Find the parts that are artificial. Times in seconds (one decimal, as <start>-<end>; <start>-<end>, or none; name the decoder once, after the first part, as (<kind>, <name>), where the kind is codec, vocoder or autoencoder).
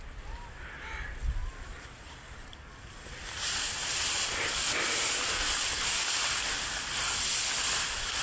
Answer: 1.4-2.7 (vocoder, BigVGAN v2)